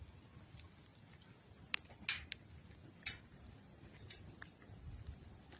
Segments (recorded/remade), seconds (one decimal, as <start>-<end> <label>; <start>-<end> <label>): 0.0-5.6 recorded